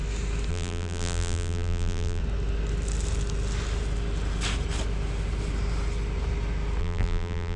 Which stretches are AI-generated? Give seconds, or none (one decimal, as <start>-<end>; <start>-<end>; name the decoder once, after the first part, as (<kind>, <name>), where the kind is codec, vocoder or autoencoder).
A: 0.5-2.2 (vocoder, BigVGAN v2); 6.8-7.6